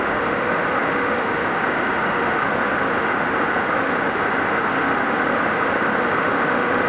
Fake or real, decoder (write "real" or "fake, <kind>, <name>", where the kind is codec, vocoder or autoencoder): fake, autoencoder, DAC-VAE